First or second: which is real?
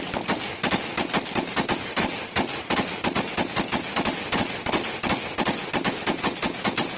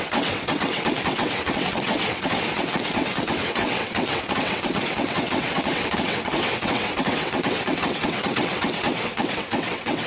first